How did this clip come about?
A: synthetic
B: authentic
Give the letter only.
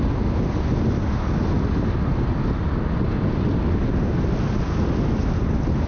B